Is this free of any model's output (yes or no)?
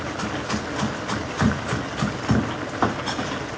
yes